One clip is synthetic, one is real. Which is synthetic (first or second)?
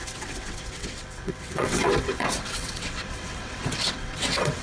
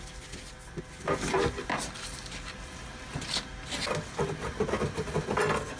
first